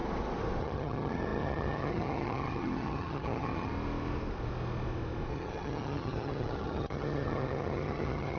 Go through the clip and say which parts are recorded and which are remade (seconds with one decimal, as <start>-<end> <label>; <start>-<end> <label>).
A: 0.0-0.6 recorded; 0.6-3.7 remade; 3.7-5.3 recorded; 5.3-8.4 remade